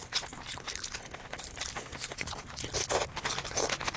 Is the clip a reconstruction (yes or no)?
no